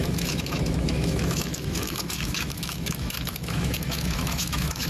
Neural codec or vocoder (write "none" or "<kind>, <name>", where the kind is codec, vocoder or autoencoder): autoencoder, DAC-VAE